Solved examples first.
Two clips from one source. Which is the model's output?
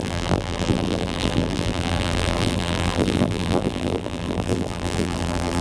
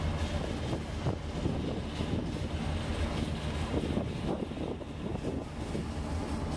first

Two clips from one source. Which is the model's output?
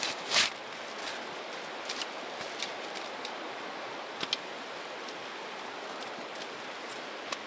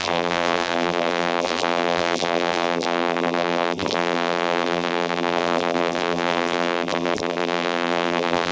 second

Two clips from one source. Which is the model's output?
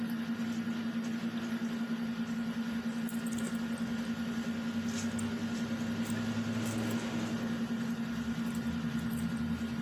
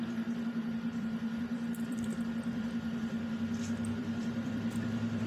second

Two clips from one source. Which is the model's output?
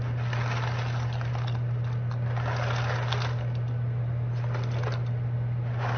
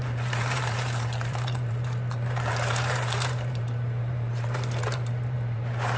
second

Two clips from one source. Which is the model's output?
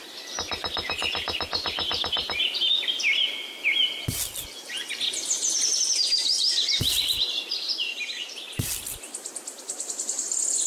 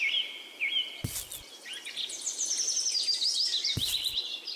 first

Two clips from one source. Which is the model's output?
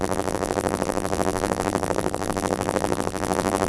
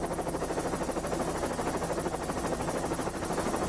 first